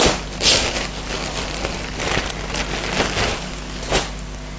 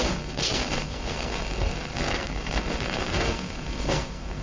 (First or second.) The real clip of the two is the first